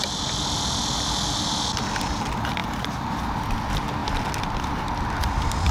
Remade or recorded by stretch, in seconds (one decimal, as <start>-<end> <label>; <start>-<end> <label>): 0.0-2.6 recorded; 2.6-3.1 remade; 3.1-5.7 recorded